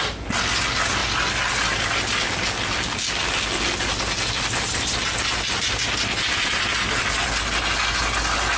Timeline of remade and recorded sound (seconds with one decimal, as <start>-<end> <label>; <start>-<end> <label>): 0.0-8.6 recorded